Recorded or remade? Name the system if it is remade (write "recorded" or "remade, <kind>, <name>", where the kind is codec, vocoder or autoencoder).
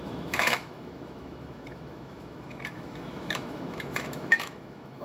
remade, autoencoder, DAC-VAE